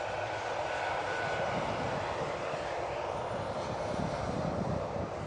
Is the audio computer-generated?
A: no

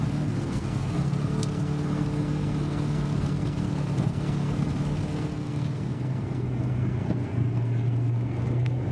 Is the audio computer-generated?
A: yes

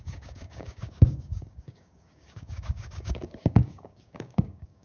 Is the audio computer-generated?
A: yes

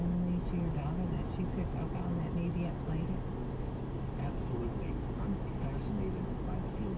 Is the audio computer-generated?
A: no